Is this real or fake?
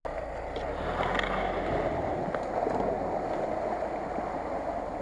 real